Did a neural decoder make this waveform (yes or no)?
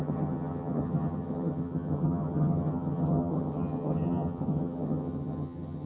yes